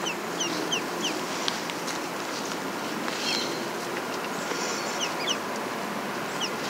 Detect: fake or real real